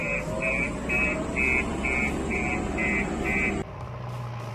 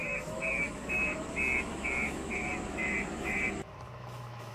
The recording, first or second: first